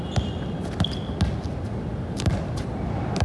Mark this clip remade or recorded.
remade